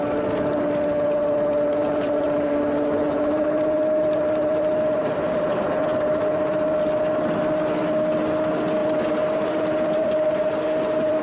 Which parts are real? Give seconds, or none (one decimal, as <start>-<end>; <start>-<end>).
0.0-1.8; 6.8-8.8